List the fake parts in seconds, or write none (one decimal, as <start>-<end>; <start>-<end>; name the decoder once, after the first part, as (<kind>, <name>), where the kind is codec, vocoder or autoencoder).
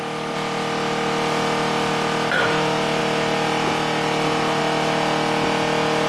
none